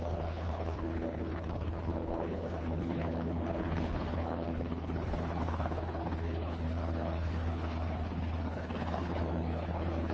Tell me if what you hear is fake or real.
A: fake